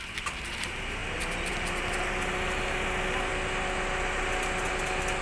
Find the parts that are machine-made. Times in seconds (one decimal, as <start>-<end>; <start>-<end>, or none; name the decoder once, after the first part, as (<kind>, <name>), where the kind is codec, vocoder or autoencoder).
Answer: none